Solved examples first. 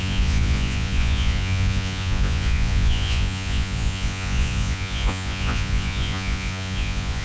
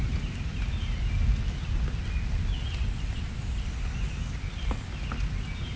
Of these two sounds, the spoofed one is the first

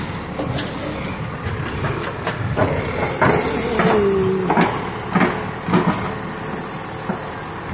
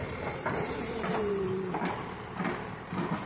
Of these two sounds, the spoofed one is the second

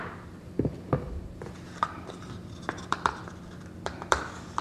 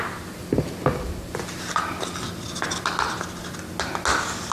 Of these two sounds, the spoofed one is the first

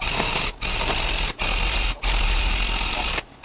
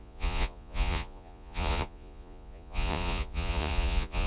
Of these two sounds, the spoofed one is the second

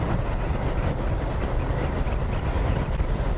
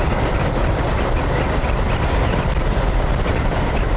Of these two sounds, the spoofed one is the second